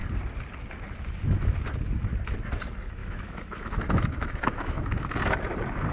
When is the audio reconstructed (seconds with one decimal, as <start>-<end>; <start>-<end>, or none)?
3.0-5.2